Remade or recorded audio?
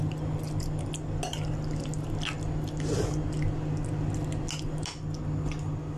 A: recorded